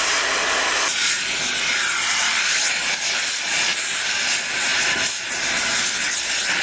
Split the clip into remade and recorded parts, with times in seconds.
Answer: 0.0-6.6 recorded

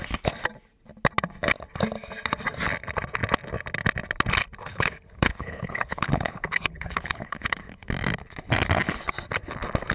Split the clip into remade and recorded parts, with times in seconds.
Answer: 0.0-4.7 recorded; 4.7-7.9 remade; 7.9-9.9 recorded

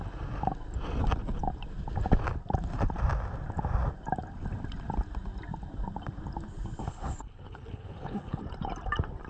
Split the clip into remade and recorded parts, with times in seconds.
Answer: 0.0-6.8 recorded; 6.8-8.4 remade; 8.4-9.3 recorded

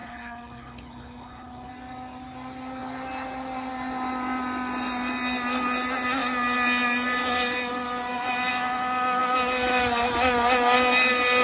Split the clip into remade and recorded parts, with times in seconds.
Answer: 0.0-1.7 remade; 1.7-11.4 recorded

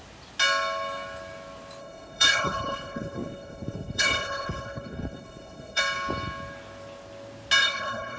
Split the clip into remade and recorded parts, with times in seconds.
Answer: 0.0-1.8 recorded; 1.8-5.8 remade; 5.8-7.6 recorded; 7.6-8.2 remade

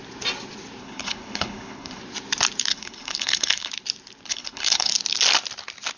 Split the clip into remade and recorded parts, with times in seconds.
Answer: 0.0-0.8 recorded; 0.8-2.0 remade; 2.0-2.7 recorded; 2.7-3.7 remade; 3.7-4.3 recorded; 4.3-4.9 remade; 4.9-6.0 recorded

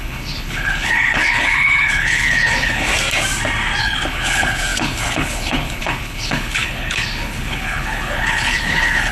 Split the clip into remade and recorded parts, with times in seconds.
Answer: 0.0-2.9 remade; 2.9-3.8 recorded; 3.8-9.1 remade